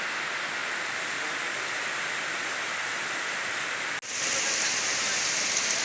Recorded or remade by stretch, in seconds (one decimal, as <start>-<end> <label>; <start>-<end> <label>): 0.0-5.8 recorded